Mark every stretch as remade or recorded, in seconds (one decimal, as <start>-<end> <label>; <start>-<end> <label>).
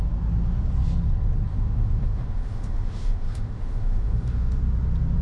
0.0-1.5 recorded; 1.5-4.6 remade; 4.6-5.2 recorded